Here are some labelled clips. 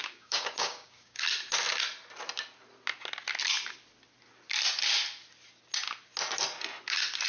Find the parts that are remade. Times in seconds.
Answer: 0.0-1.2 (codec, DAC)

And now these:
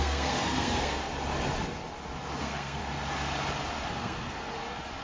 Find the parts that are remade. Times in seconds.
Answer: 0.0-1.1 (codec, SNAC); 2.4-2.8; 3.9-4.5

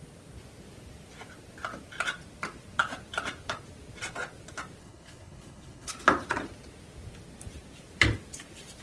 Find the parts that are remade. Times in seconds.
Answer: 4.8-5.9 (codec, HILCodec)

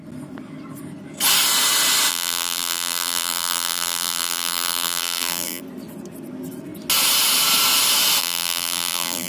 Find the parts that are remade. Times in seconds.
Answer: 2.1-5.6 (vocoder, BigVGAN v2); 8.2-9.3

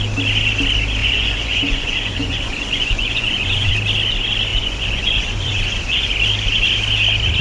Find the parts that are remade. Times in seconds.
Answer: 1.0-3.7 (vocoder, Vocos); 4.5-6.1